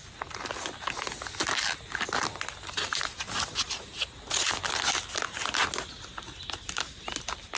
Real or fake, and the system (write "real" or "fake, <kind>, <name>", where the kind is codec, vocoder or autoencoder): real